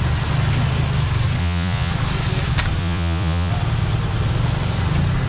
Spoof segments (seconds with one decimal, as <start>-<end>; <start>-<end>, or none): 1.4-1.9; 2.8-3.5